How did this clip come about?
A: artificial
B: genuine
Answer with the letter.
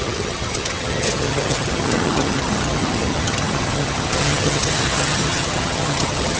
A